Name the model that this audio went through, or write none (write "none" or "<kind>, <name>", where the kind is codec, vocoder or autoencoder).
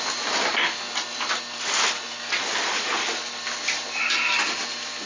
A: none